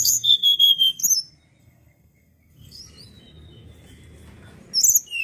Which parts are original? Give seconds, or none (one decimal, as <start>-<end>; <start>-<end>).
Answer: 1.0-1.6; 2.8-5.2